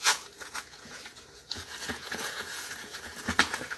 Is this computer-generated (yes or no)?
yes